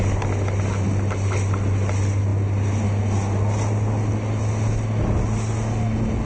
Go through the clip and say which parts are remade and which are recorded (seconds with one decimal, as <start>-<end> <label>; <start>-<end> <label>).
0.0-6.3 recorded